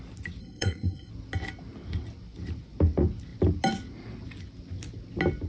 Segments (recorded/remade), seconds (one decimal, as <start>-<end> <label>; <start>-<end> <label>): 0.0-0.4 recorded; 0.4-1.1 remade; 1.1-5.5 recorded